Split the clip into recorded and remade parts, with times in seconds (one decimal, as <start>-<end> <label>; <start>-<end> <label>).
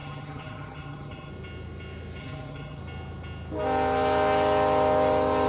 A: 0.0-1.3 remade; 1.3-2.2 recorded; 2.2-2.8 remade; 2.8-5.5 recorded